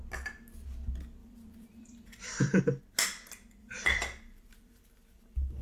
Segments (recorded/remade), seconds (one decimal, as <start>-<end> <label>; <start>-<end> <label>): 0.0-1.2 recorded; 1.2-2.6 remade; 2.6-3.6 recorded; 3.6-5.6 remade

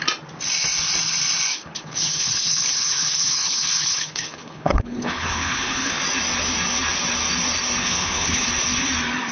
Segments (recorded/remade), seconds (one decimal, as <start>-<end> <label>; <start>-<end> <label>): 0.0-1.5 recorded; 1.5-6.0 remade; 6.0-7.8 recorded; 7.8-8.5 remade; 8.5-9.3 recorded

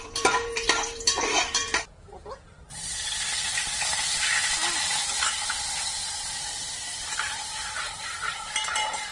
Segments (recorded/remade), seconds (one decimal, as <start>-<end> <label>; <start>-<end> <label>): 0.0-4.3 remade; 4.3-6.4 recorded; 6.4-9.1 remade

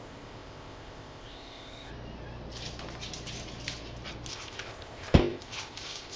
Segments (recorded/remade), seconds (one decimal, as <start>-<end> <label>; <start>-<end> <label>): 0.0-1.9 remade; 1.9-4.3 recorded; 4.3-6.2 remade